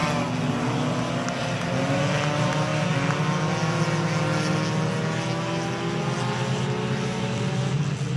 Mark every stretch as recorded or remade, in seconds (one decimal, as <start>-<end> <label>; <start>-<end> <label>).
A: 0.0-8.2 recorded